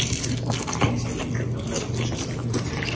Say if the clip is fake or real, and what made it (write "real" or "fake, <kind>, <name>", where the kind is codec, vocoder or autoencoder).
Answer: real